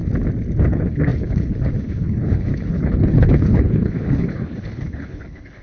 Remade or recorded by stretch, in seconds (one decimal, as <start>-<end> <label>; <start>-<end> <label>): 0.0-0.7 recorded; 0.7-5.6 remade